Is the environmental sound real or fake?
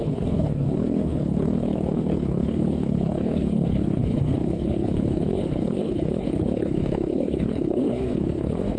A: fake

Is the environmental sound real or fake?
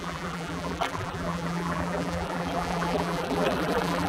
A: fake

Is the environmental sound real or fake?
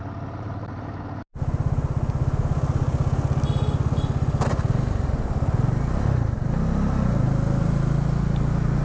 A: real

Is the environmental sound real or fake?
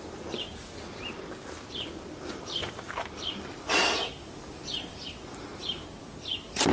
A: real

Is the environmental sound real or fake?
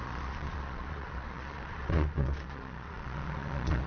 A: fake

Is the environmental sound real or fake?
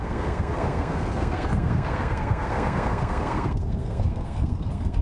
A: fake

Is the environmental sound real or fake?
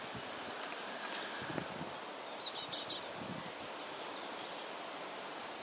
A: real